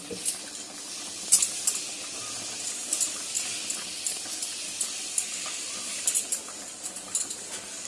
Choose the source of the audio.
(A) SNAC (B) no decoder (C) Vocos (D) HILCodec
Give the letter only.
B